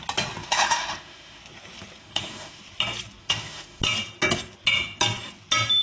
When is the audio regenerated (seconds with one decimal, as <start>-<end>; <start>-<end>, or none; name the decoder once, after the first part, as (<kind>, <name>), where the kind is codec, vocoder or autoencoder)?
0.4-1.4 (autoencoder, DAC-VAE); 2.0-2.6; 3.2-3.8